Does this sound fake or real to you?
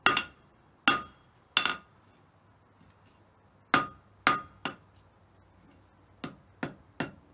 real